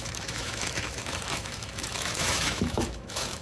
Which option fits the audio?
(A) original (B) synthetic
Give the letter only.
B